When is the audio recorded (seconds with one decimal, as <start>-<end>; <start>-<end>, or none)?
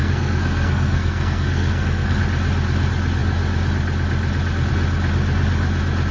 2.2-6.1